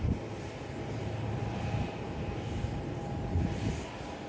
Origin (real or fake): real